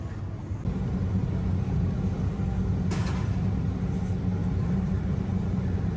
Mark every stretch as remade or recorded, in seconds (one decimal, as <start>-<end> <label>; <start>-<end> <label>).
0.0-4.4 recorded; 4.4-6.0 remade